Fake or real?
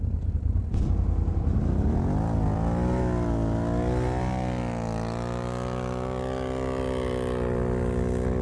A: real